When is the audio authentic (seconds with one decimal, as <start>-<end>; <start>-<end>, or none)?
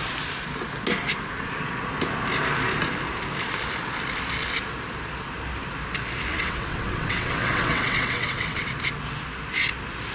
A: 0.0-6.3; 8.7-10.1